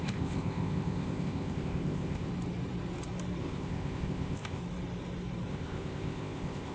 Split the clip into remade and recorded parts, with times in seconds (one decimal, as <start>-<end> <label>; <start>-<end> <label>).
0.0-2.3 remade; 2.3-3.4 recorded; 3.4-4.6 remade; 4.6-5.5 recorded; 5.5-6.7 remade